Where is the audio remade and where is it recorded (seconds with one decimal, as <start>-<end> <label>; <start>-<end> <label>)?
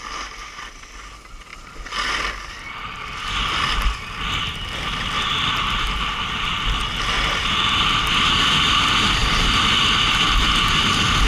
0.0-11.3 recorded